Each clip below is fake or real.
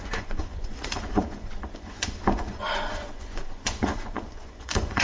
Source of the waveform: fake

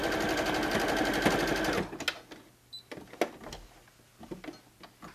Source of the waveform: real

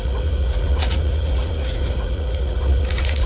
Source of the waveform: fake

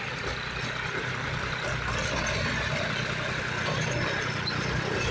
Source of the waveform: real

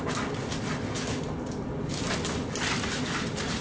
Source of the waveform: real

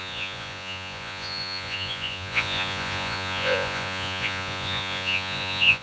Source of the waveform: fake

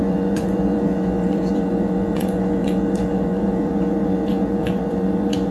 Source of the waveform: fake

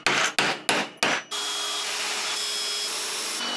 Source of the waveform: real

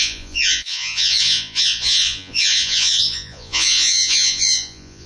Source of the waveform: fake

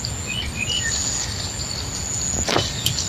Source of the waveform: real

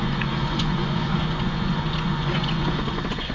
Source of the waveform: fake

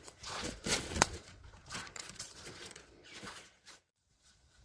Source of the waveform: fake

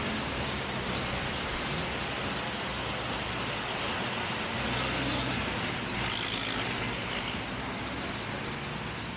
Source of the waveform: real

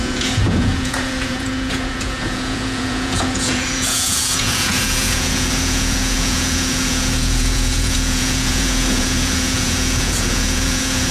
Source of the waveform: fake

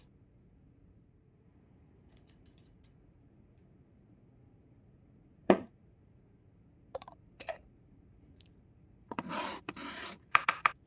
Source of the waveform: fake